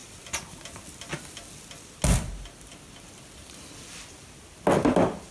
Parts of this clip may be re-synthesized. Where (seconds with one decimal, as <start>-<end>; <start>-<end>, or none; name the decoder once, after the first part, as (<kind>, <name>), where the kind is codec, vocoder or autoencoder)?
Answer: none